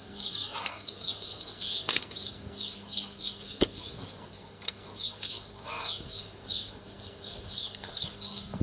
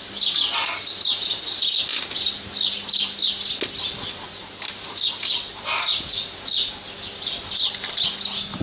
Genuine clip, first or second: second